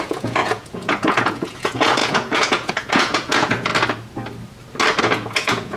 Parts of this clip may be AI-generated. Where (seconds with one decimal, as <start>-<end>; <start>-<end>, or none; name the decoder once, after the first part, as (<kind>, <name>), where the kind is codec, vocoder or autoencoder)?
0.0-3.7 (vocoder, Vocos); 5.0-5.8